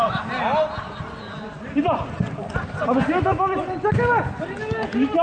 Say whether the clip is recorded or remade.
recorded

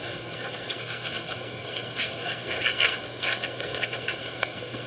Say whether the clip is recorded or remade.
remade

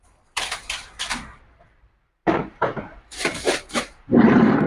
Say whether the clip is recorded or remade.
remade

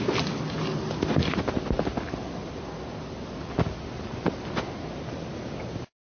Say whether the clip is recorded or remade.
recorded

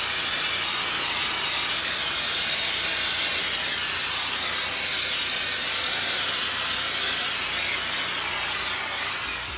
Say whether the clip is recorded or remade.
recorded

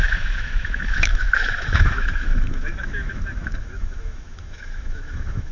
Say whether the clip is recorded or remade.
remade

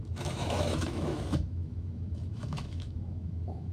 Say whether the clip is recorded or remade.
remade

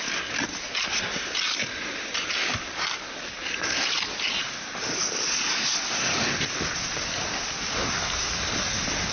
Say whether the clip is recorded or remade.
recorded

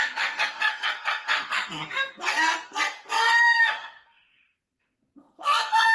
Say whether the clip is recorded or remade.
remade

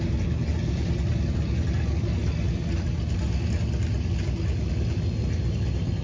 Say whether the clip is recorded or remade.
recorded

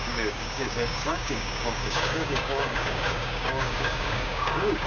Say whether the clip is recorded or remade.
remade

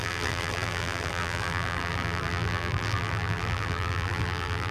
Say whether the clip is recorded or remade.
remade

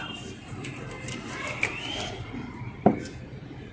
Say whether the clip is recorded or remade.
remade